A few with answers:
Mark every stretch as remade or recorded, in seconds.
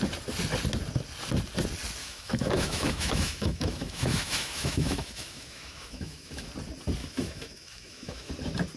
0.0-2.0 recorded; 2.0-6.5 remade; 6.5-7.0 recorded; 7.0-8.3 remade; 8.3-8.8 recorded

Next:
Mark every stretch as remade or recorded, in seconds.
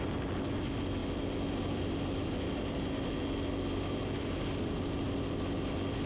0.0-6.1 recorded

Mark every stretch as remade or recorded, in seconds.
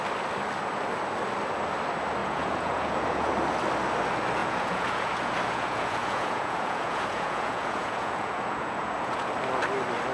0.0-2.2 recorded; 2.2-3.3 remade; 3.3-4.4 recorded; 4.4-9.3 remade; 9.3-10.1 recorded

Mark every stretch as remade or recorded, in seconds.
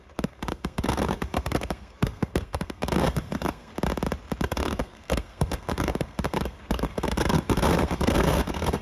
0.0-3.7 remade; 3.7-4.4 recorded; 4.4-8.8 remade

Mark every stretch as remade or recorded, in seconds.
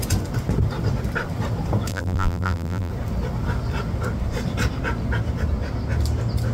0.0-1.9 recorded; 1.9-2.9 remade; 2.9-6.5 recorded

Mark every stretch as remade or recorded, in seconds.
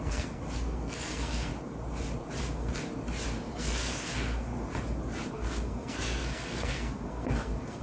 0.0-1.5 remade; 1.5-2.4 recorded; 2.4-2.8 remade; 2.8-3.5 recorded; 3.5-4.5 remade; 4.5-5.3 recorded; 5.3-7.8 remade